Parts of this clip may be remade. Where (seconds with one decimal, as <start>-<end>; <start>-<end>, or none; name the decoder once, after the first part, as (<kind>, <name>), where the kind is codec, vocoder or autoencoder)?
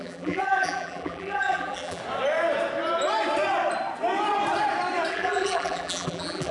0.0-2.0 (vocoder, BigVGAN v2); 5.1-6.5